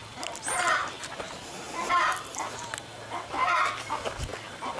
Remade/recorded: recorded